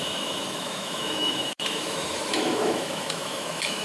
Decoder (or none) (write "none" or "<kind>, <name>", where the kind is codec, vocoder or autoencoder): autoencoder, DAC-VAE